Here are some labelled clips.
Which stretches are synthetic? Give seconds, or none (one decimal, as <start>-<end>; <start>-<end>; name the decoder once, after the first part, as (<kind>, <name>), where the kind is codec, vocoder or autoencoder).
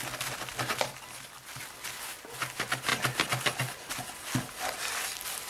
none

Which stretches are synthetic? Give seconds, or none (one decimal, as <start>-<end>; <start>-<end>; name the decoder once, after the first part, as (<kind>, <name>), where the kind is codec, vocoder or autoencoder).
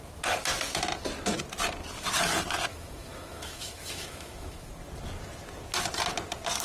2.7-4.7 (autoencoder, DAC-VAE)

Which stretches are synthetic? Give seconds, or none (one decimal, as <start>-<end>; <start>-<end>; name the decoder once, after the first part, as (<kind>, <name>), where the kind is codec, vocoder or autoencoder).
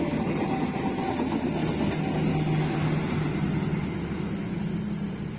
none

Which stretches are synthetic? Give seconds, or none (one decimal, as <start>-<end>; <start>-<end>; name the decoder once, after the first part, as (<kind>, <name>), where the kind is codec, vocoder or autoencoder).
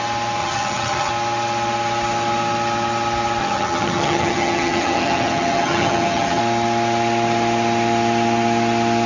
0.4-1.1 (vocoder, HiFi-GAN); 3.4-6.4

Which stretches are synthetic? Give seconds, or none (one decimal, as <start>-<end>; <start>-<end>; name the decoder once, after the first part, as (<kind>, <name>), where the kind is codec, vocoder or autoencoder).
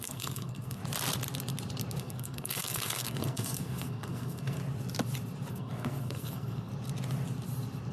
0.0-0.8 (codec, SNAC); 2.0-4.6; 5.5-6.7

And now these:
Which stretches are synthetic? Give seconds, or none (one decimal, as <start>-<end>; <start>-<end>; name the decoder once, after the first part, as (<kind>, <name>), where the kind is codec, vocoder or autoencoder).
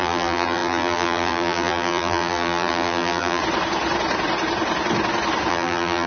0.0-3.4 (vocoder, BigVGAN v2); 5.5-6.1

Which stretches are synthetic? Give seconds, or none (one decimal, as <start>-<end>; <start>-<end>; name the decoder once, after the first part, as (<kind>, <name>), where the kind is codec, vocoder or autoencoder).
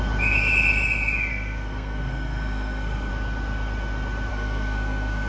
1.3-3.1 (codec, SNAC); 4.3-5.3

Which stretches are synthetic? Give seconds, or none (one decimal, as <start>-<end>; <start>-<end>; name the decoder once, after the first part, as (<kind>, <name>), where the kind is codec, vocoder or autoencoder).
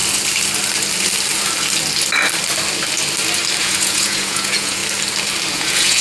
3.6-4.8 (vocoder, Vocos); 5.5-6.0